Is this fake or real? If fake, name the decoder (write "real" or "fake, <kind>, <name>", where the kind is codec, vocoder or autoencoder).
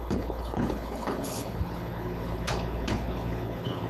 fake, codec, HILCodec